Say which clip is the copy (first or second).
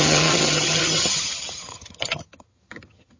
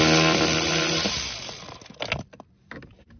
first